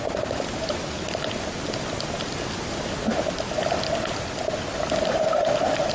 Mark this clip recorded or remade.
recorded